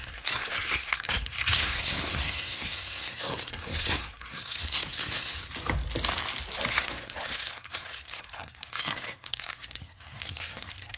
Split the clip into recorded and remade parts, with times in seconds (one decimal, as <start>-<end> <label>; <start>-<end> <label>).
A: 0.0-5.4 remade; 5.4-6.7 recorded; 6.7-11.0 remade